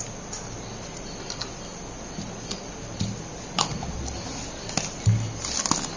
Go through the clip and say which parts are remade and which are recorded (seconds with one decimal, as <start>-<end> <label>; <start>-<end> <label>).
0.0-6.0 recorded

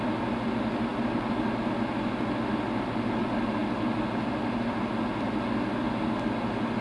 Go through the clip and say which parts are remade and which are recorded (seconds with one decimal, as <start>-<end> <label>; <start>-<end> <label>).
0.0-6.8 recorded